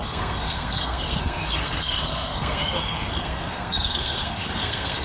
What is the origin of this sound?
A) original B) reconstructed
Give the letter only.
B